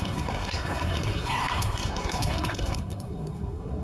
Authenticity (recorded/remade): remade